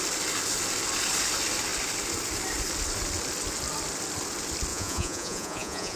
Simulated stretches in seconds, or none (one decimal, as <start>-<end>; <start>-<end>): 4.7-6.0